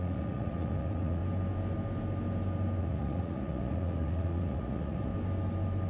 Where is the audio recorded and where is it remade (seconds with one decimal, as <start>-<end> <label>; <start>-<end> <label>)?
0.0-1.2 remade; 1.2-2.8 recorded; 2.8-5.1 remade; 5.1-5.9 recorded